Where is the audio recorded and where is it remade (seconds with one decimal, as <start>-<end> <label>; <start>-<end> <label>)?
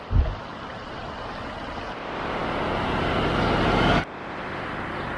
0.0-5.2 recorded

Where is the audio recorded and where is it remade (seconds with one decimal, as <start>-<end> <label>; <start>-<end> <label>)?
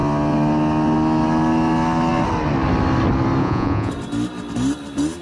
0.0-3.4 recorded; 3.4-3.9 remade; 3.9-5.2 recorded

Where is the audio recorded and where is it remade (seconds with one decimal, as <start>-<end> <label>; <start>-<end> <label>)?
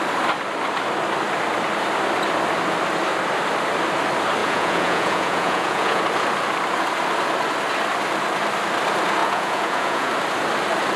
0.0-4.4 recorded; 4.4-6.0 remade; 6.0-9.2 recorded; 9.2-10.1 remade; 10.1-11.0 recorded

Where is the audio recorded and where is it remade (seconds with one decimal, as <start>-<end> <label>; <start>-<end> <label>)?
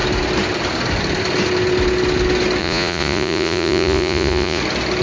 0.0-2.6 recorded; 2.6-4.6 remade; 4.6-5.0 recorded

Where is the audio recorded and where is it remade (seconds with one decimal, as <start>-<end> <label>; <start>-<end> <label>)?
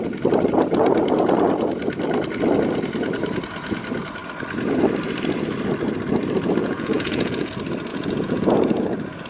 0.0-6.6 recorded; 6.6-7.5 remade; 7.5-7.9 recorded; 7.9-8.8 remade; 8.8-9.3 recorded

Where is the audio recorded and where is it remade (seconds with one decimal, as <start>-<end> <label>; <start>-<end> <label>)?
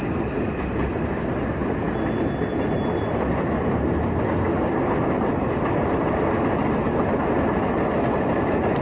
0.0-8.8 recorded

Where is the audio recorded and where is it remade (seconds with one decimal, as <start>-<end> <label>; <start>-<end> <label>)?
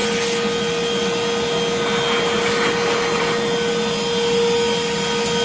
0.0-5.4 recorded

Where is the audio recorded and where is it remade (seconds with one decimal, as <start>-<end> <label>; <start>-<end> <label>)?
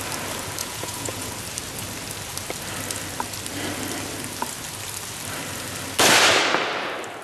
0.0-0.6 recorded; 0.6-1.3 remade; 1.3-7.2 recorded